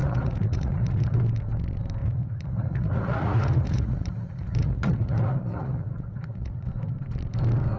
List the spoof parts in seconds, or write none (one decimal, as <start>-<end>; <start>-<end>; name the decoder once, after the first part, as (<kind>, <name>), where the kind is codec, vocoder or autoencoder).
0.0-1.2 (vocoder, Vocos); 2.0-6.7